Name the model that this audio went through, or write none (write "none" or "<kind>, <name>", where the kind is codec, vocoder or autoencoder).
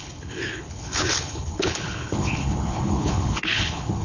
codec, HILCodec